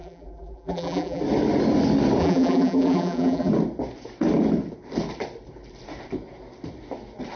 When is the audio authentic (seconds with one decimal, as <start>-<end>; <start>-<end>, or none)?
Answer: 1.2-2.2; 3.5-7.4